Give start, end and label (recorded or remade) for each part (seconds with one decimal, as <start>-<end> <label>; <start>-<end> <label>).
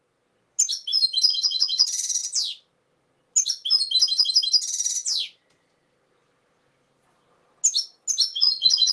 0.0-1.3 recorded; 1.3-2.2 remade; 2.2-8.3 recorded; 8.3-8.9 remade